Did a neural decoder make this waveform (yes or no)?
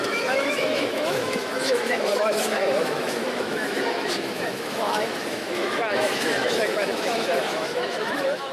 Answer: yes